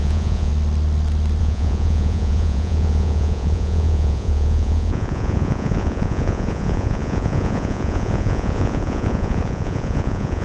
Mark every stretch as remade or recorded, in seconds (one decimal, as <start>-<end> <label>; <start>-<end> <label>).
0.0-0.5 remade; 0.5-1.4 recorded; 1.4-10.4 remade